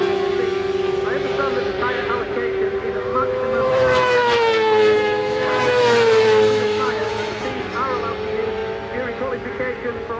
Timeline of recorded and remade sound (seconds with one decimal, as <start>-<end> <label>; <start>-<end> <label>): 0.0-3.1 recorded; 3.1-7.1 remade; 7.1-10.2 recorded